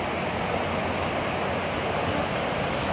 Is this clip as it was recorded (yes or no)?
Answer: yes